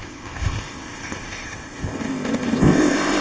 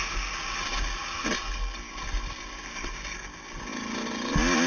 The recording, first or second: second